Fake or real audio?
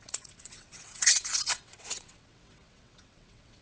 fake